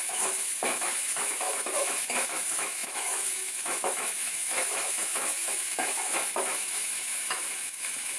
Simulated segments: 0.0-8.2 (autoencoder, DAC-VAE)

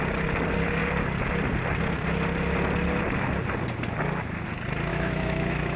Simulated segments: 4.9-5.8 (autoencoder, DAC-VAE)

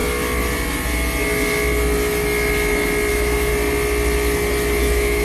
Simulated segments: 3.1-3.5 (autoencoder, DAC-VAE); 4.8-5.2

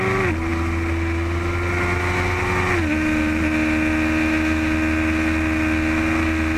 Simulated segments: none

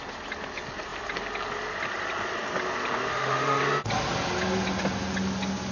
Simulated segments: 3.1-3.6 (autoencoder, DAC-VAE)

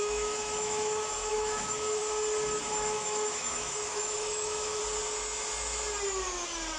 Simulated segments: 0.0-2.0 (autoencoder, DAC-VAE); 2.7-4.8

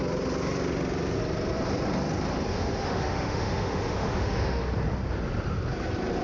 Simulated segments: 2.5-4.6 (autoencoder, DAC-VAE)

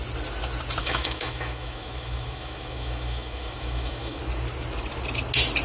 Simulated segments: 0.8-4.2 (autoencoder, DAC-VAE)